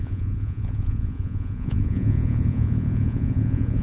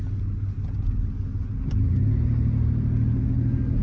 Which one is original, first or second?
second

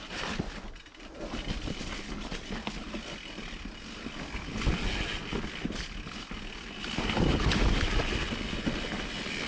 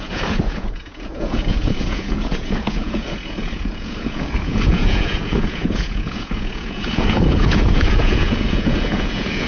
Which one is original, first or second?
first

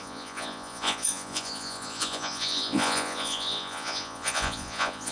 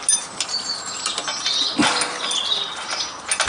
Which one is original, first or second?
second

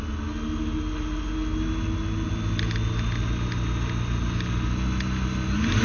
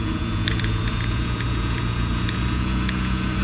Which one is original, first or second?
first